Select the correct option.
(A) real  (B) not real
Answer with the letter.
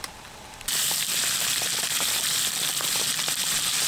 B